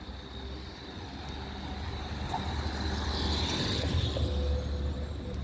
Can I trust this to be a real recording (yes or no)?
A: yes